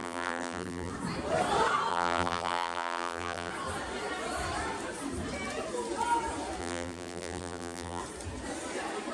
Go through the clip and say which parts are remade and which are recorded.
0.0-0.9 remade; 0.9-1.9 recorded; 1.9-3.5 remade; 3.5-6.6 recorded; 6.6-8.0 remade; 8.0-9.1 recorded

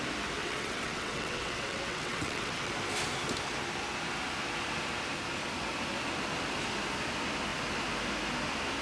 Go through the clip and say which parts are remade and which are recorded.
0.0-0.4 recorded; 0.4-2.7 remade; 2.7-8.8 recorded